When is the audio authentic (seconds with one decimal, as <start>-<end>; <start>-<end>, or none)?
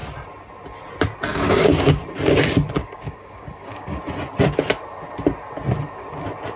0.0-1.3; 2.0-2.8; 4.0-6.6